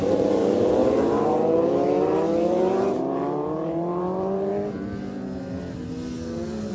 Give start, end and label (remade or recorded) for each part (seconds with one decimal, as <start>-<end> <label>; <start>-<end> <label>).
0.0-4.5 remade; 4.5-6.7 recorded